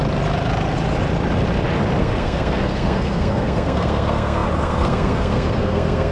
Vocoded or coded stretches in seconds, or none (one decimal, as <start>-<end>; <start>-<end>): 2.0-6.1